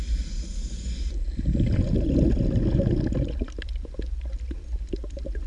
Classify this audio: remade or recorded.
recorded